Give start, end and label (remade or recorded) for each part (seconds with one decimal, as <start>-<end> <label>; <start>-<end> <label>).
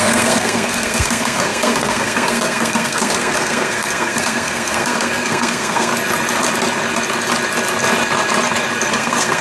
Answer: 0.0-5.9 remade; 5.9-8.9 recorded; 8.9-9.4 remade